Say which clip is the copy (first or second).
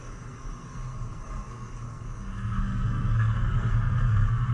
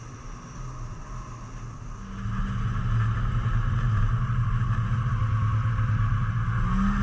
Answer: first